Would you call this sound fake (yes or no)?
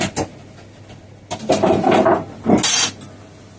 no